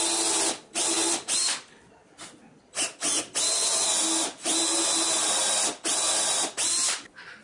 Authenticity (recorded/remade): recorded